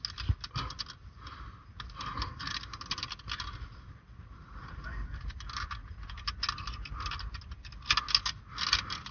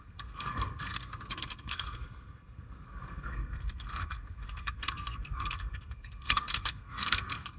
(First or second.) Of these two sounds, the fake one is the second